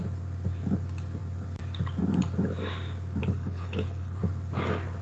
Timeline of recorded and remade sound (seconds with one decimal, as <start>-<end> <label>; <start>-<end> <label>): 0.0-3.2 recorded; 3.2-4.2 remade; 4.2-5.0 recorded

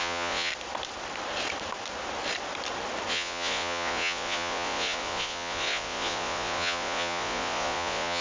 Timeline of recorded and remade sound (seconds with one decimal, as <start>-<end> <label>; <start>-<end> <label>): 0.0-0.5 remade; 0.5-3.1 recorded; 3.1-8.2 remade

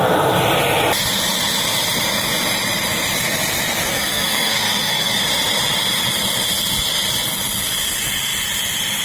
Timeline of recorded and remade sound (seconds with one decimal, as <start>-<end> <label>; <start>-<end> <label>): 0.0-3.9 recorded; 3.9-5.2 remade; 5.2-9.0 recorded

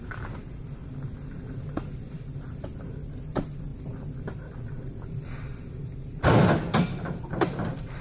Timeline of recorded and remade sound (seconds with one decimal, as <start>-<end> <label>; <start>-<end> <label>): 0.0-3.7 remade; 3.7-4.7 recorded; 4.7-8.0 remade

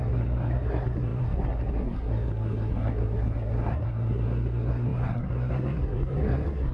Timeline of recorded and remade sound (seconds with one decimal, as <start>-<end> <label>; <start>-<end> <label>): 0.0-6.7 remade

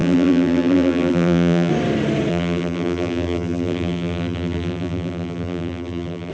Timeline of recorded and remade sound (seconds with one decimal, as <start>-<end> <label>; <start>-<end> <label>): 0.0-1.7 remade; 1.7-2.3 recorded; 2.3-6.3 remade